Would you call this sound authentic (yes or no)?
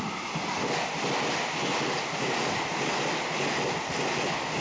yes